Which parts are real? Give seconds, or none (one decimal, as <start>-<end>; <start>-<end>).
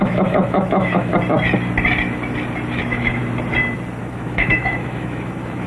1.1-2.8; 3.2-4.0